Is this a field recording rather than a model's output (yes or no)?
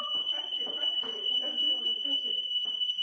no